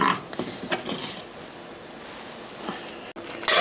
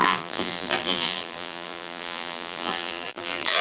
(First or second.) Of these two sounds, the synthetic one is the second